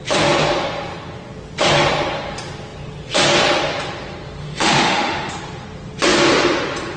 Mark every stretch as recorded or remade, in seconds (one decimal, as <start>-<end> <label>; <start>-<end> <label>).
0.0-4.4 recorded; 4.4-5.3 remade; 5.3-7.0 recorded